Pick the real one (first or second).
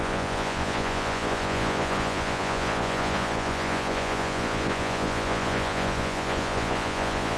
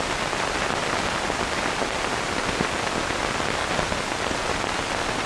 second